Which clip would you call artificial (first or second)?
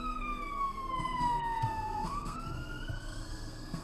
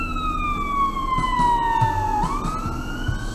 first